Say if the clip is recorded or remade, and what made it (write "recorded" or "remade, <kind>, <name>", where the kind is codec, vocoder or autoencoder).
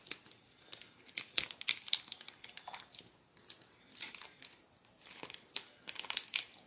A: recorded